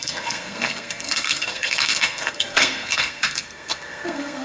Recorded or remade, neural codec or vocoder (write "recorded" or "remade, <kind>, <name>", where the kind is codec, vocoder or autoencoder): remade, codec, SNAC